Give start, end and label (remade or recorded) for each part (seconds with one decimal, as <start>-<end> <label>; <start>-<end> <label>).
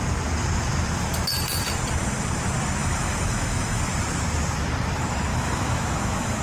0.0-2.8 recorded; 2.8-3.8 remade; 3.8-5.3 recorded; 5.3-6.4 remade